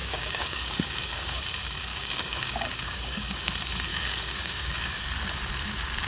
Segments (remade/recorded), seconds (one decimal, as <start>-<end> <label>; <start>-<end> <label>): 0.0-1.4 remade; 1.4-1.9 recorded; 1.9-3.5 remade; 3.5-3.9 recorded; 3.9-5.0 remade; 5.0-6.1 recorded